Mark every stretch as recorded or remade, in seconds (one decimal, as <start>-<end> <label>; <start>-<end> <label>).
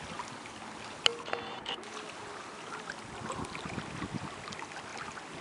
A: 0.0-1.1 remade; 1.1-2.7 recorded; 2.7-4.9 remade; 4.9-5.4 recorded